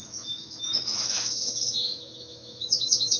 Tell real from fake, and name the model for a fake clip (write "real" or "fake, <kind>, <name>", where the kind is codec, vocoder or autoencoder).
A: fake, autoencoder, DAC-VAE